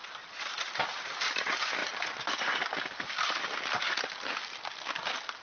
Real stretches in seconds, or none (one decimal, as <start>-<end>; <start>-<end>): 0.7-1.8; 3.4-5.4